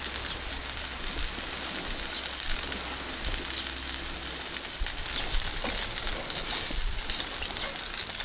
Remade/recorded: recorded